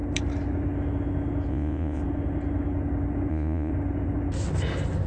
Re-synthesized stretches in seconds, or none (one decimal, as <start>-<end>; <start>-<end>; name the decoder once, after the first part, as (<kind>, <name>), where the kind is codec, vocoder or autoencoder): 1.5-2.0 (vocoder, Vocos); 3.3-3.7